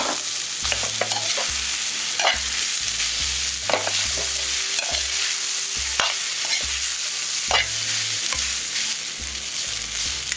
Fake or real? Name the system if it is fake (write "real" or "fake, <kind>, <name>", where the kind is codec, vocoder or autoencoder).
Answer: real